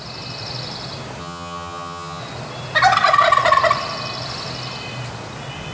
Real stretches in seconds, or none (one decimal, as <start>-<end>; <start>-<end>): 0.0-1.2; 2.2-5.7